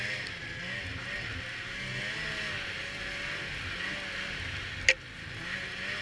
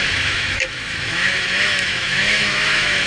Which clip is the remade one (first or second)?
second